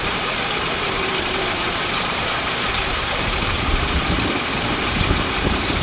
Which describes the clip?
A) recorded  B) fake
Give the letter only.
B